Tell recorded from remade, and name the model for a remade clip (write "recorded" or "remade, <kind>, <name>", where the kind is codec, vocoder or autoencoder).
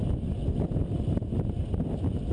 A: recorded